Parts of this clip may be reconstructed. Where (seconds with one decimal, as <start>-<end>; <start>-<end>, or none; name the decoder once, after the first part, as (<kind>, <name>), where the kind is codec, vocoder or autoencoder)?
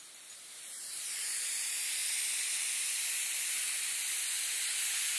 0.0-2.0 (vocoder, BigVGAN v2)